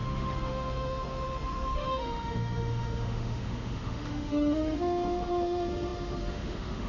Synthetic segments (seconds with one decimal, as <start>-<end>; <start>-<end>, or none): 0.0-6.9